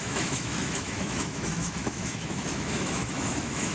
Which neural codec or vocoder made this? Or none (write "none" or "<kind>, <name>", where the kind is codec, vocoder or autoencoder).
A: autoencoder, DAC-VAE